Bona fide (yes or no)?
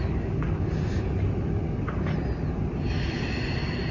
yes